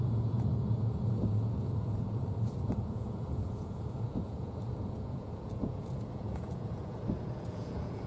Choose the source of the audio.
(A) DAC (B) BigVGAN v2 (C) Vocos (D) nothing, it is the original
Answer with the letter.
C